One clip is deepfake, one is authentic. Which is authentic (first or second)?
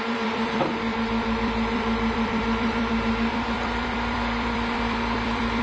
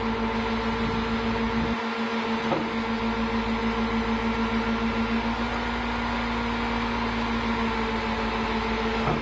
second